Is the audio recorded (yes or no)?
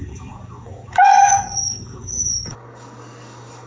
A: no